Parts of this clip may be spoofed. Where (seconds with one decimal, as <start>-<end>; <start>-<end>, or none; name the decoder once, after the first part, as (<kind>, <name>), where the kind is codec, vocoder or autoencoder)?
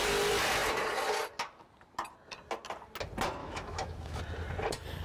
3.4-4.2 (autoencoder, DAC-VAE)